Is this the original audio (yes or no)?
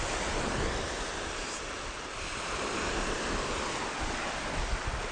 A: no